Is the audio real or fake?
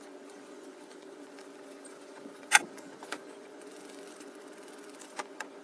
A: fake